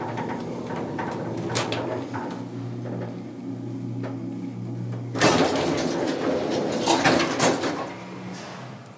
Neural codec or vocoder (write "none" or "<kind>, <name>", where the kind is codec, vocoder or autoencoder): none